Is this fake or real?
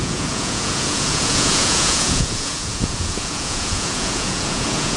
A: fake